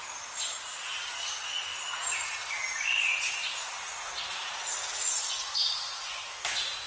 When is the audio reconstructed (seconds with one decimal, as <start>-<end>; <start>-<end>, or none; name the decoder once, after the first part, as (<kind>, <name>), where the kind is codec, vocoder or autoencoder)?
none